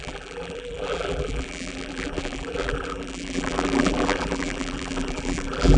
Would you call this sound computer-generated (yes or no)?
yes